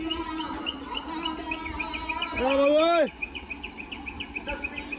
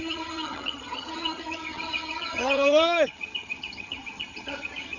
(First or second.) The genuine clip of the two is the first